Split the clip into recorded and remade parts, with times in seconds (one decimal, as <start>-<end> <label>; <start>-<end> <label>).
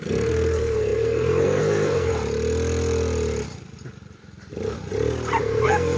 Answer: 0.0-2.1 remade; 2.1-5.4 recorded; 5.4-6.0 remade